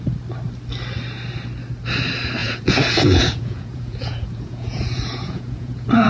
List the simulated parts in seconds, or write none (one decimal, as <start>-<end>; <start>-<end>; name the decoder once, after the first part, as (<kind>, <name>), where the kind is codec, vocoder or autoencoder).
2.4-6.1 (vocoder, Vocos)